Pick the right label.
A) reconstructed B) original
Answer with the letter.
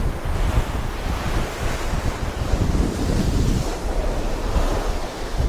B